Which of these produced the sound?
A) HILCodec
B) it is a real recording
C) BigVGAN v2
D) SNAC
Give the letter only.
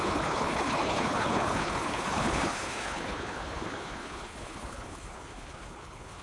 A